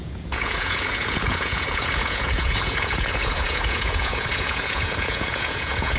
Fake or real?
fake